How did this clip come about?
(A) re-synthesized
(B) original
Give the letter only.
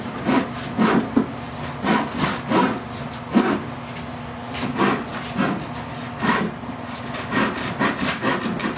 B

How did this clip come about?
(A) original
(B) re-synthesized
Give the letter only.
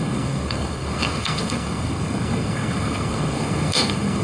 B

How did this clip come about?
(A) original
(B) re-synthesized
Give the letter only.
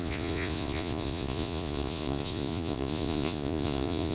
B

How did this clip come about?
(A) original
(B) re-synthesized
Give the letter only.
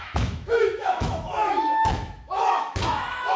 B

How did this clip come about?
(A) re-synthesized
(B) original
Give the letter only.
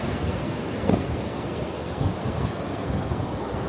A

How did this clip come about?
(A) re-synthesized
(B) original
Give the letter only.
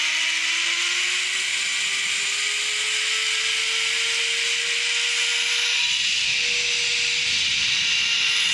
B